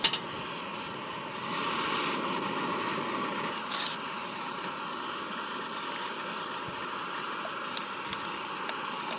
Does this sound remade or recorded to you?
recorded